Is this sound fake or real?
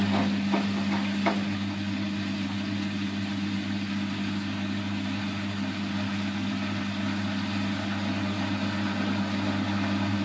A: real